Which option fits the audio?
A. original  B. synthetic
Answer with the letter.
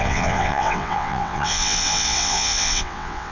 B